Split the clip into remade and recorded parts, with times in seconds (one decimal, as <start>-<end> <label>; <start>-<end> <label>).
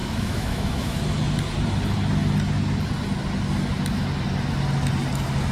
0.0-1.0 remade; 1.0-5.5 recorded